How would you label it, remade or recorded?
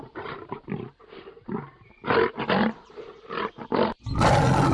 recorded